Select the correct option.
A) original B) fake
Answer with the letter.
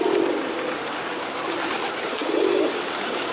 A